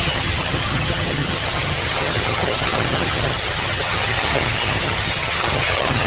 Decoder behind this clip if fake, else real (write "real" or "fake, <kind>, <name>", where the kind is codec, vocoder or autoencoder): fake, vocoder, HiFi-GAN